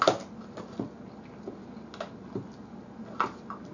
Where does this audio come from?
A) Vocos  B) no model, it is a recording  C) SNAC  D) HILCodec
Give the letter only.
B